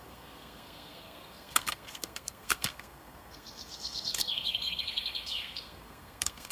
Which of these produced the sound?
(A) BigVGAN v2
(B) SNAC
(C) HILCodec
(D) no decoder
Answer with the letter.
B